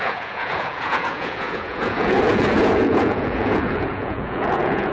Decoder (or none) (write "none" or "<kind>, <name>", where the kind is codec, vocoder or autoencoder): vocoder, Vocos